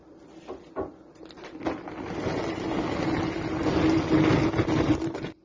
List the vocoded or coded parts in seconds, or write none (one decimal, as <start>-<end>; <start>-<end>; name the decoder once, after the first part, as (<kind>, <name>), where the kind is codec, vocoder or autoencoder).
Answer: none

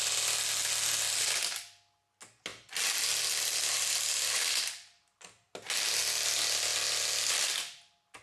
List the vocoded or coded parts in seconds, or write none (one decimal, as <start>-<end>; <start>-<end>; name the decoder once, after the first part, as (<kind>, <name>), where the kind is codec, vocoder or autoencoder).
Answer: none

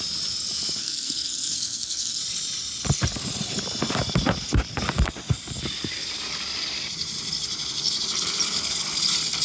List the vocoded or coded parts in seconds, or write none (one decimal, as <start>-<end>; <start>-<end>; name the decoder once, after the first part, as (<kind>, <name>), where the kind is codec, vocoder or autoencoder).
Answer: 0.8-2.2 (codec, SNAC)

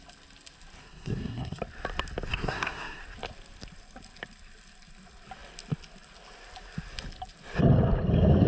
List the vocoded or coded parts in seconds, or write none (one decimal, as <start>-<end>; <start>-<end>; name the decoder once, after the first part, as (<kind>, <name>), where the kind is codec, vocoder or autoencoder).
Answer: 0.8-1.6 (codec, SNAC); 2.3-3.0

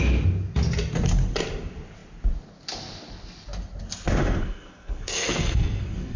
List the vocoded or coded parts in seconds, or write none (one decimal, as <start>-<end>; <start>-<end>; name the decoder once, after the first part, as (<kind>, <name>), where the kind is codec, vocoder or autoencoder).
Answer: 4.2-6.2 (codec, SNAC)

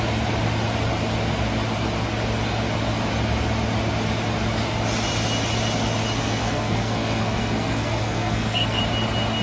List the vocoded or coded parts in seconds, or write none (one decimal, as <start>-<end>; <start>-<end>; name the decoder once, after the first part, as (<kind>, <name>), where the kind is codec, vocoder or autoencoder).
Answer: 6.2-8.8 (codec, SNAC)

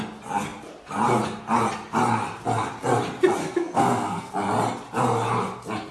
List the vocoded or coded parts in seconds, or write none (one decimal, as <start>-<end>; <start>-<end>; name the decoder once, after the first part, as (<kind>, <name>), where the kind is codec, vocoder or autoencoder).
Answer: 3.4-4.3 (codec, SNAC)

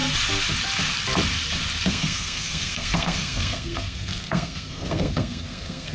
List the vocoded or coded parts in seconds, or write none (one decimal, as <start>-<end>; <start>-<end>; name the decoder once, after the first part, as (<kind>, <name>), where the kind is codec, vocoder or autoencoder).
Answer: 1.9-5.9 (codec, SNAC)